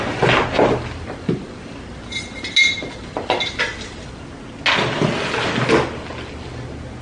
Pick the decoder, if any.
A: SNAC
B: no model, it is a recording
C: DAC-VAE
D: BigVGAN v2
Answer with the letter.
B